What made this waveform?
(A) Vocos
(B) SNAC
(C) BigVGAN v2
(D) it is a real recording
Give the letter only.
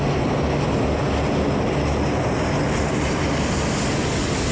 D